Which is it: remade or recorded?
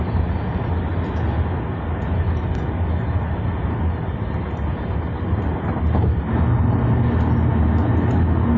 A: recorded